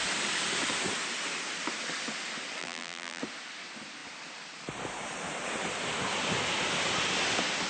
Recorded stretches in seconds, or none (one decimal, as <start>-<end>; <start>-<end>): 0.0-2.6; 3.2-7.7